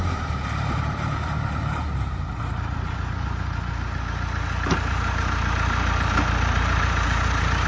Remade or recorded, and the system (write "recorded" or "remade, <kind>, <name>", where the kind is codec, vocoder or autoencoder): remade, vocoder, BigVGAN v2